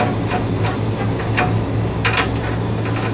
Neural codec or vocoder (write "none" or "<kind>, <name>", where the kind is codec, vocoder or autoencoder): none